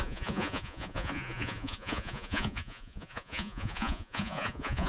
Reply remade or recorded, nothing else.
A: remade